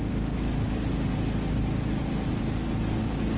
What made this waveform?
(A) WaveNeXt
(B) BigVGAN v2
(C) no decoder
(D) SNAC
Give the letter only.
C